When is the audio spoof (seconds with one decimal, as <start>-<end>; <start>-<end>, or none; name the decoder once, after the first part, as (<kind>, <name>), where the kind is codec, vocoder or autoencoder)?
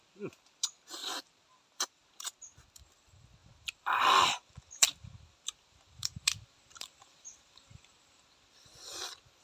1.0-2.0 (vocoder, BigVGAN v2); 3.4-8.2